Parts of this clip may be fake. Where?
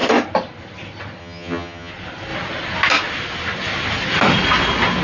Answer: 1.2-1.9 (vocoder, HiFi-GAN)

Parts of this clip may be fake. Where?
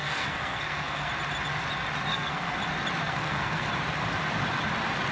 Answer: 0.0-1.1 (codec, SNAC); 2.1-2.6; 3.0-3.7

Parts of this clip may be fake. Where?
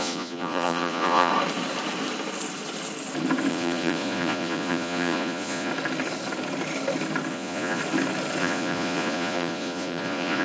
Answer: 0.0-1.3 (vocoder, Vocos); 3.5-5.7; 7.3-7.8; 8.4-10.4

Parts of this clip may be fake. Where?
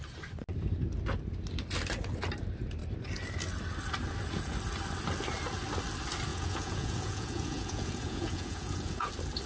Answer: 6.3-9.1 (vocoder, Vocos)